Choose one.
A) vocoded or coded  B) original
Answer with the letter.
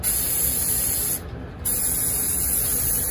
B